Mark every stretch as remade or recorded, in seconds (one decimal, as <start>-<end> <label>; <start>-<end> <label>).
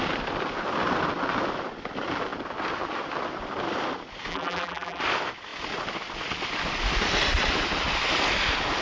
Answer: 0.0-4.3 recorded; 4.3-5.0 remade; 5.0-8.8 recorded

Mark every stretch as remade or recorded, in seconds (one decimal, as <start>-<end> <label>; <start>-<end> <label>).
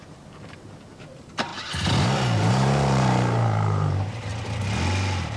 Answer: 0.0-1.5 remade; 1.5-2.5 recorded; 2.5-4.3 remade; 4.3-5.4 recorded